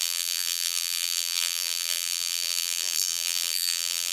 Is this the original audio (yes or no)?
no